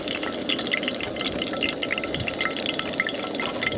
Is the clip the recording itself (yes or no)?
yes